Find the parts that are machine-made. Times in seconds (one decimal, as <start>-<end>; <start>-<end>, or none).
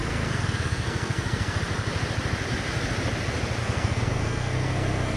0.0-1.6; 3.6-5.2